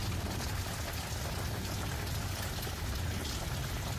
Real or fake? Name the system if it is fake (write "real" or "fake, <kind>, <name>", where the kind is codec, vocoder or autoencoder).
real